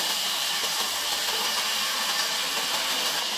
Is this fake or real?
real